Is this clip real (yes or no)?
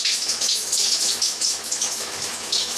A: no